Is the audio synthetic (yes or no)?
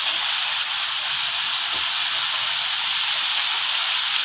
yes